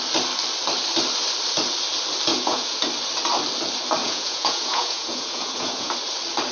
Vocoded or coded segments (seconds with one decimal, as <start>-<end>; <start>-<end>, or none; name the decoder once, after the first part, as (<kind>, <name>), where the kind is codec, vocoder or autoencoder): 2.3-2.8 (vocoder, Vocos); 4.0-5.9